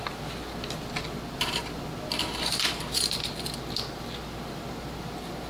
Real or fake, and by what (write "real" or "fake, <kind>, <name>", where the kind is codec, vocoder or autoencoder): real